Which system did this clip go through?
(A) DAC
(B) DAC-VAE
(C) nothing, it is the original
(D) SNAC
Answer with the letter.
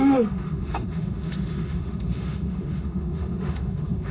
B